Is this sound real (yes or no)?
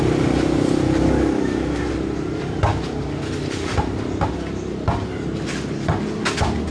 yes